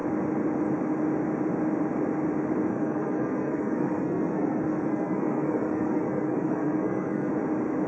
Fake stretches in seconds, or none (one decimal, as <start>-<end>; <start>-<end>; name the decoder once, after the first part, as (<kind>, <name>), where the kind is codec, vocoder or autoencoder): 2.7-7.3 (codec, SNAC)